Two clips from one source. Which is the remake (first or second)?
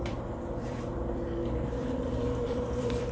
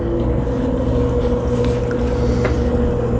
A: first